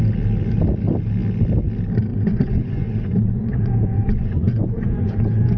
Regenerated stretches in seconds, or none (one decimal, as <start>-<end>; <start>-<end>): 2.1-5.6